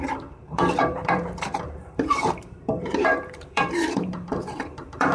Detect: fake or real fake